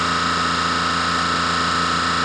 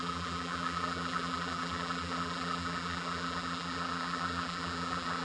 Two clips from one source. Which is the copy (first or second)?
second